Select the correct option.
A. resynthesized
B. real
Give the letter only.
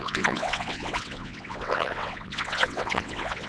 A